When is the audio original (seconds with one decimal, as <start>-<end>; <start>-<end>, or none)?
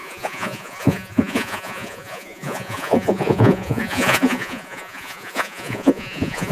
none